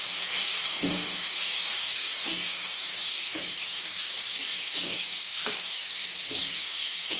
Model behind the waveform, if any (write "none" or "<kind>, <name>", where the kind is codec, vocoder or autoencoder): codec, DAC